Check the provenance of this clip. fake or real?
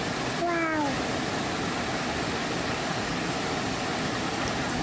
real